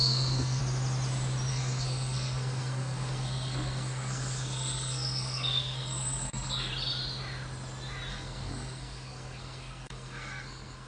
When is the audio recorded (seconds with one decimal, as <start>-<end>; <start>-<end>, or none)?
0.6-1.5; 6.7-8.1